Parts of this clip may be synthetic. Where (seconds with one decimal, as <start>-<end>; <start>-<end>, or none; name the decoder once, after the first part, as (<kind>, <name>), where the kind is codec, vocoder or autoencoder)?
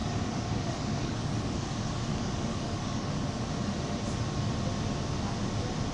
0.0-3.5 (codec, DAC)